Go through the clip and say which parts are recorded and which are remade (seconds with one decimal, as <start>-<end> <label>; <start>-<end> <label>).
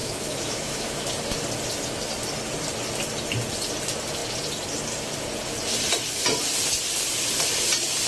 0.0-1.1 remade; 1.1-8.1 recorded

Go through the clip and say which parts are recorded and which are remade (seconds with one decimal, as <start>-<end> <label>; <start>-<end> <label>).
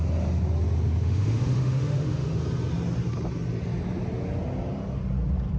0.0-1.0 recorded; 1.0-2.4 remade; 2.4-5.6 recorded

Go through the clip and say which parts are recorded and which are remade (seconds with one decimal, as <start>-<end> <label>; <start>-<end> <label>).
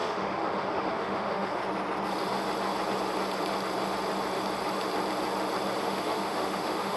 0.0-1.6 remade; 1.6-5.8 recorded; 5.8-7.0 remade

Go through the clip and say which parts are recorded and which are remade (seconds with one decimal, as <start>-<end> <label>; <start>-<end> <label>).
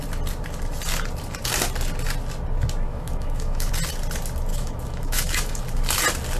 0.0-2.9 recorded; 2.9-3.7 remade; 3.7-4.5 recorded; 4.5-5.6 remade; 5.6-6.4 recorded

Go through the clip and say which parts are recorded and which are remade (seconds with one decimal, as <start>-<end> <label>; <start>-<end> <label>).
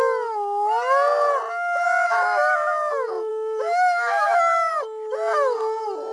0.0-2.0 recorded; 2.0-2.9 remade; 2.9-3.3 recorded; 3.3-4.7 remade; 4.7-6.1 recorded